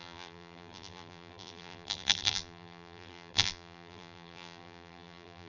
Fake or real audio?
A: fake